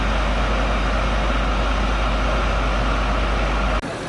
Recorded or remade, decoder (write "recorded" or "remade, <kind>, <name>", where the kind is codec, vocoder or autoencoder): recorded